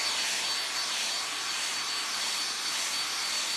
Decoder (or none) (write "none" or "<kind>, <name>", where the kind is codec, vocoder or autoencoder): none